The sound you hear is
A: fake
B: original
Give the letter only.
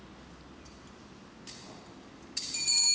B